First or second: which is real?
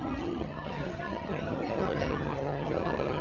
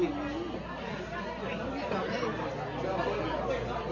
second